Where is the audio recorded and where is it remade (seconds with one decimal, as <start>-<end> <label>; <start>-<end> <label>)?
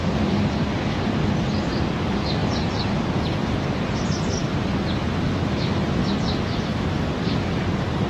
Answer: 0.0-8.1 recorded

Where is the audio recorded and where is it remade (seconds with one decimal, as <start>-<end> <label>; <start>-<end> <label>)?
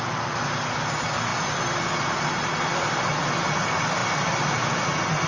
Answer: 0.0-1.3 recorded; 1.3-2.1 remade; 2.1-4.0 recorded; 4.0-4.8 remade; 4.8-5.3 recorded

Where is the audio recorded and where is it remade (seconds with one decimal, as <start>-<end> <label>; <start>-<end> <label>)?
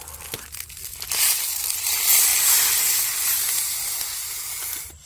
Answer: 0.0-5.1 recorded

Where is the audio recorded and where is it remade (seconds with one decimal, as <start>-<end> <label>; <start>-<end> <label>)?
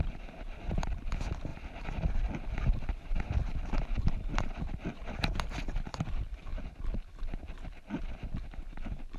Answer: 0.0-1.5 recorded; 1.5-4.6 remade; 4.6-6.5 recorded; 6.5-7.1 remade; 7.1-9.2 recorded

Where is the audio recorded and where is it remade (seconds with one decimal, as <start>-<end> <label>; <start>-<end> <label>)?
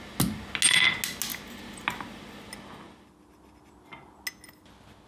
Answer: 0.0-5.1 recorded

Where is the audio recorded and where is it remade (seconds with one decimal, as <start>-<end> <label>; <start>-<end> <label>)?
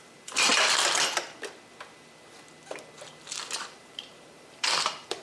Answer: 0.0-0.5 remade; 0.5-3.6 recorded; 3.6-5.2 remade